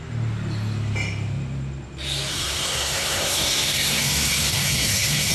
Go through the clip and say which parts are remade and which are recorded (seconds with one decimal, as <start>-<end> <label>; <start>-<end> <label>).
0.0-2.3 recorded; 2.3-5.3 remade